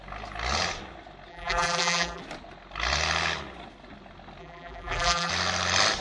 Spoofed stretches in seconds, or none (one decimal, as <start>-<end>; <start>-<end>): 1.3-2.2; 4.4-5.3